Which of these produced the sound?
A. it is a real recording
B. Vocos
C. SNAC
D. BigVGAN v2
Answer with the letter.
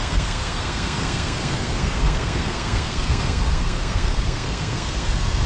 C